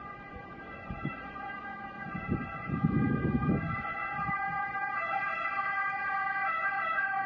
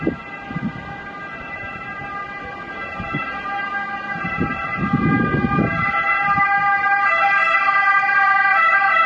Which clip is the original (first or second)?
second